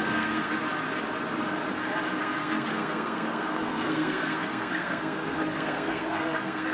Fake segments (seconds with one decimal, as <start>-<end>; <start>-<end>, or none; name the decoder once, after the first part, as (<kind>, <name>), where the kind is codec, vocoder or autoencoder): 0.0-0.5 (codec, SNAC); 2.2-6.7